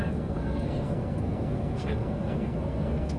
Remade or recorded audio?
remade